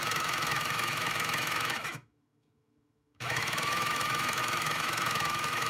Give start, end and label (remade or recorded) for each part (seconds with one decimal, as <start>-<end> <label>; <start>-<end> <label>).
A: 0.0-5.7 remade